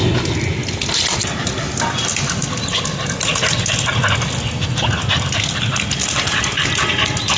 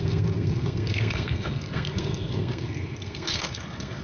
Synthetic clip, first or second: second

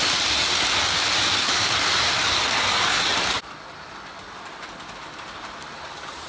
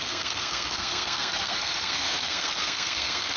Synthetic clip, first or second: second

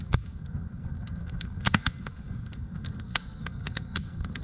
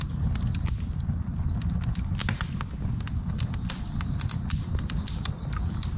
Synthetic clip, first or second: first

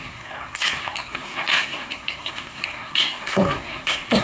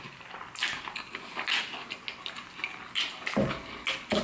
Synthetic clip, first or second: first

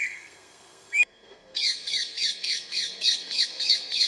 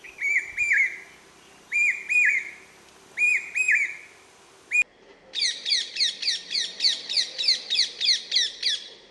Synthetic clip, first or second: first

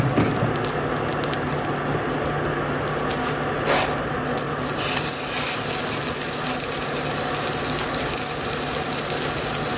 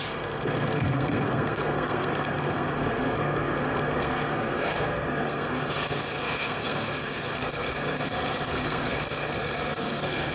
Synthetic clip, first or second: second